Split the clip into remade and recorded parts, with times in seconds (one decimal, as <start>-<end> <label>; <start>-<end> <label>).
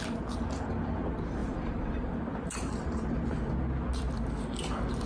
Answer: 0.0-1.4 recorded; 1.4-3.4 remade; 3.4-5.1 recorded